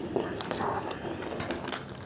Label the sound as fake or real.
real